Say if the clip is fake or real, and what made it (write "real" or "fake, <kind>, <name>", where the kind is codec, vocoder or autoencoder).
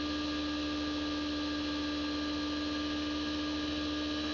real